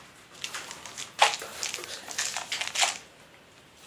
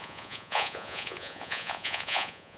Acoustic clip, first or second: first